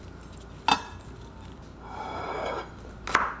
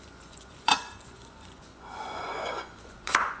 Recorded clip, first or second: first